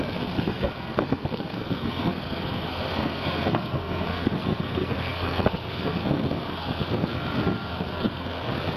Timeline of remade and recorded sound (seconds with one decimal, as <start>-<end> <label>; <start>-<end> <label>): 0.0-8.8 remade